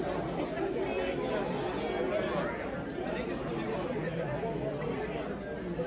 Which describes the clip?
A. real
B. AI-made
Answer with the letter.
A